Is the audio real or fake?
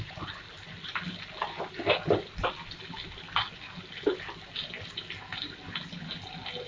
real